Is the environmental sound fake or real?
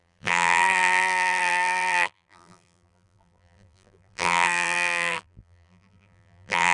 fake